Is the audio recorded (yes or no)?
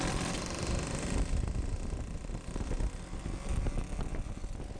yes